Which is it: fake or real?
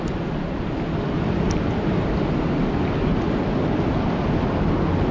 real